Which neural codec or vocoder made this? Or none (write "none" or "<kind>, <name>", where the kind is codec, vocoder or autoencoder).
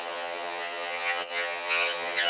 vocoder, HiFi-GAN